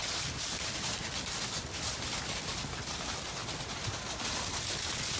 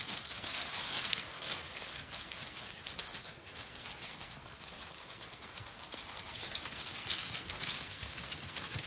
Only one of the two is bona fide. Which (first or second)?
first